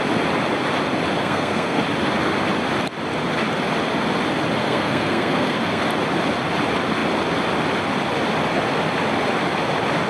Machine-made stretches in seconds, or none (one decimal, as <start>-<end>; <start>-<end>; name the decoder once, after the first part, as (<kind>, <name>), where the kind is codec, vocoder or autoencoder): 1.2-1.8 (codec, SNAC); 4.6-5.8